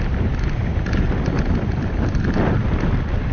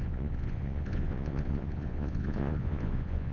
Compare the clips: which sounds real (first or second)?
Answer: first